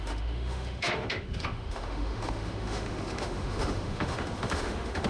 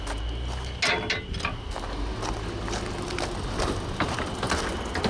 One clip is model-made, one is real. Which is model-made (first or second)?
first